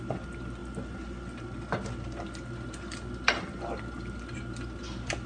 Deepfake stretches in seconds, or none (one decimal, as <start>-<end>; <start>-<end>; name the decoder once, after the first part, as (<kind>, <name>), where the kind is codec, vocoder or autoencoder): none